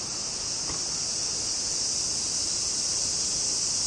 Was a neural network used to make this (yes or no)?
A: no